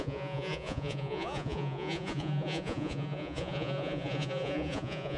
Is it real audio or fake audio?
fake